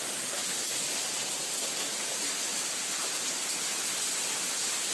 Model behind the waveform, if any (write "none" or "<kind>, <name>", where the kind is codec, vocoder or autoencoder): none